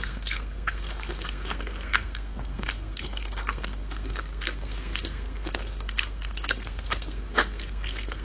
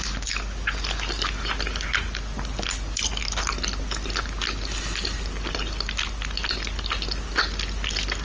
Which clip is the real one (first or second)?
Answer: second